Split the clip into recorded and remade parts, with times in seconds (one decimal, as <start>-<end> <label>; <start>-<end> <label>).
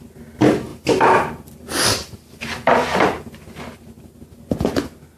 0.0-0.7 recorded; 0.7-3.6 remade; 3.6-5.2 recorded